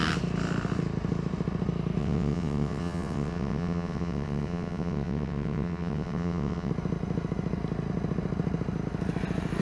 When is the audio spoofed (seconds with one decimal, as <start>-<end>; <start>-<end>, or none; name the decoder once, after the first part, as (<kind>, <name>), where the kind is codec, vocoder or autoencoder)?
2.0-6.7 (vocoder, WaveNeXt)